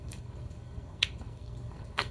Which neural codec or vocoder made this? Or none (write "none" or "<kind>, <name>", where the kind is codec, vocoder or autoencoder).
codec, SNAC